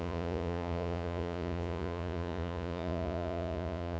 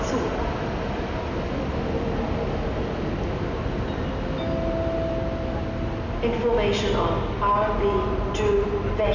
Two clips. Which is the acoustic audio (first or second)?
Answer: second